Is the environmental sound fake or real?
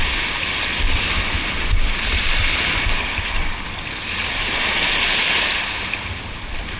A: real